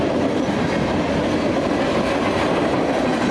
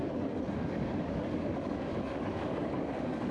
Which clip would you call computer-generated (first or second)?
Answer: second